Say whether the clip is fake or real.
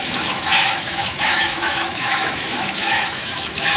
fake